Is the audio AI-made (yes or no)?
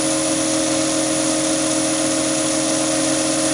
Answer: no